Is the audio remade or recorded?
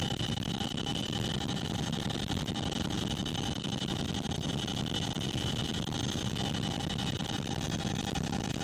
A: recorded